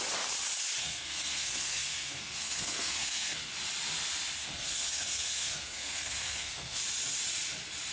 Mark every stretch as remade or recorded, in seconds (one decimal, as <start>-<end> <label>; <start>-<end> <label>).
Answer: 0.0-0.8 recorded; 0.8-3.5 remade; 3.5-4.4 recorded; 4.4-6.8 remade; 6.8-7.9 recorded